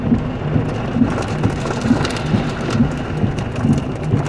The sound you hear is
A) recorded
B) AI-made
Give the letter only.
A